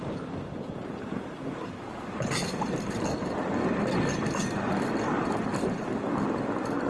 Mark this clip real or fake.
real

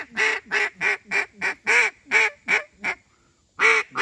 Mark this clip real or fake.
real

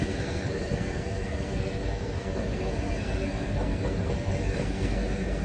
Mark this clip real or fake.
fake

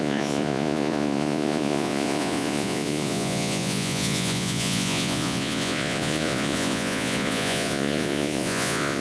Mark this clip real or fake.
fake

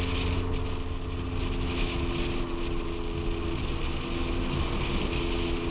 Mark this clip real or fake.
real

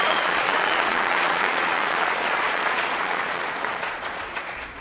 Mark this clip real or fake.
fake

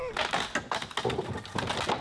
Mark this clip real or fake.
real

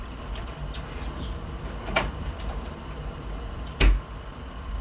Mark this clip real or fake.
fake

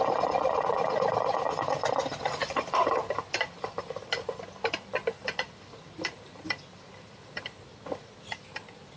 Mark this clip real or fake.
real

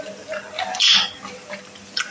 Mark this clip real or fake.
real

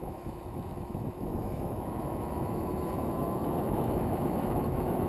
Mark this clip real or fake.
fake